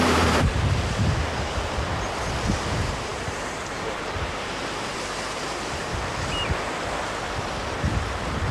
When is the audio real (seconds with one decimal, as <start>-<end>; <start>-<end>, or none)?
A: 1.9-2.7; 5.9-7.6